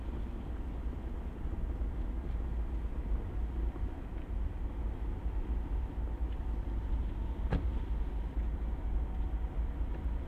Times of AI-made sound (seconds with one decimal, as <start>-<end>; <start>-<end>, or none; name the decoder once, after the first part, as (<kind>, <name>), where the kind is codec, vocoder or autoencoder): 4.1-4.7 (vocoder, BigVGAN v2)